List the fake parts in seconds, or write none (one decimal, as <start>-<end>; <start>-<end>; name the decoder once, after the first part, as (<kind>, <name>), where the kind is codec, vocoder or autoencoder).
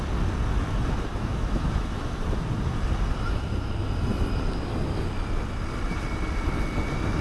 1.1-2.2 (autoencoder, DAC-VAE)